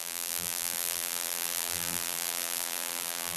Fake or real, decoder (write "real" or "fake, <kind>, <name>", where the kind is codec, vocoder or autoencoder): fake, vocoder, BigVGAN v2